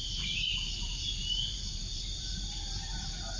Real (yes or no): no